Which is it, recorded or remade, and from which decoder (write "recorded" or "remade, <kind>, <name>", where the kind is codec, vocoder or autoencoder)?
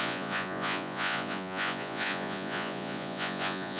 remade, vocoder, Vocos